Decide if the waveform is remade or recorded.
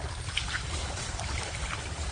remade